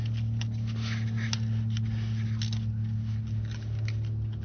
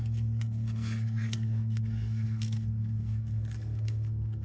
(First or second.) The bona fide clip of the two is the first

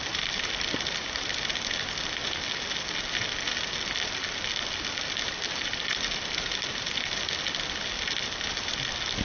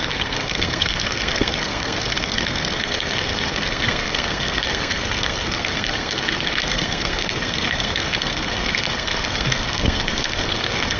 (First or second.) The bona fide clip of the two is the first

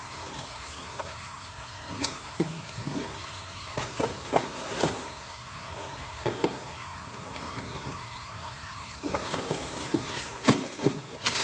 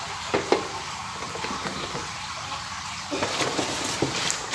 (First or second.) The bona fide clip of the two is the second